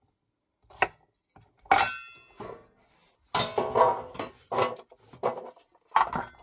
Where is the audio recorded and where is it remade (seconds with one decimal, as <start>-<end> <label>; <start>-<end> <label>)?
0.0-6.4 recorded